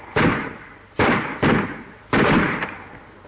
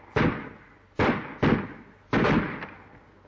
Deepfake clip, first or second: first